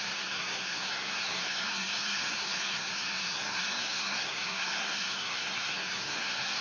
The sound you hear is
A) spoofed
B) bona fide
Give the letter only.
A